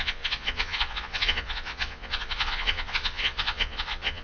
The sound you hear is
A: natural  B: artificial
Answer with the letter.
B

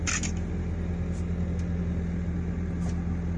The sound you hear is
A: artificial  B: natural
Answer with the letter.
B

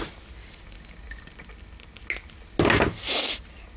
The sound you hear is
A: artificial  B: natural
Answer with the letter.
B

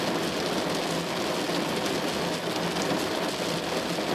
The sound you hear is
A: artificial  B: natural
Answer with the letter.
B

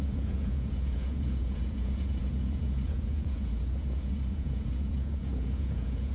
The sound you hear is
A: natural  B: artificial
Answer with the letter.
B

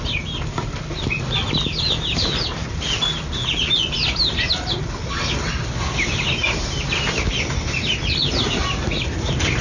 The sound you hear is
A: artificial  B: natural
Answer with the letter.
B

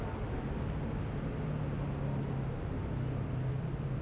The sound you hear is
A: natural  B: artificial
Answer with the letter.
A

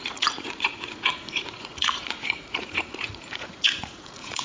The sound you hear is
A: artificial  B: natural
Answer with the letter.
A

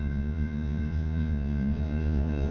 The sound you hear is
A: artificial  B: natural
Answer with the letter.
A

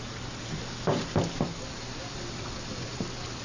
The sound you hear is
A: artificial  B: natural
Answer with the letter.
B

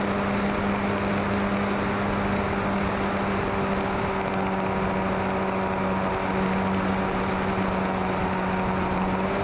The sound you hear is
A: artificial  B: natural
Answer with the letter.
B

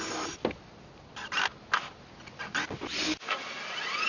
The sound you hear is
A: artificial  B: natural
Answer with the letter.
B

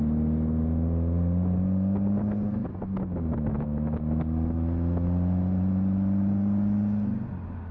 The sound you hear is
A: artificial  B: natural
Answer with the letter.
B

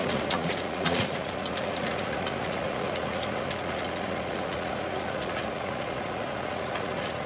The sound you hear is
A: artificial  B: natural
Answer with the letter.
A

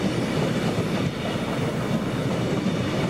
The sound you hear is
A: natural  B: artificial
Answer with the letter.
A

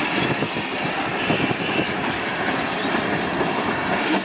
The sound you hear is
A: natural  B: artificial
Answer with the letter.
A